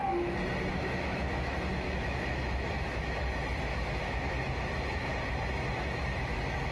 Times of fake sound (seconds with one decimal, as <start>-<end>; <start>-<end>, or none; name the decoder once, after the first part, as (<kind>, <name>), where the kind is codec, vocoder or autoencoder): 0.7-5.1 (autoencoder, DAC-VAE); 6.0-6.7